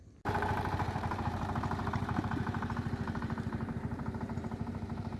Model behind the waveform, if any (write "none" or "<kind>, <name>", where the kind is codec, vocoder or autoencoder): vocoder, BigVGAN v2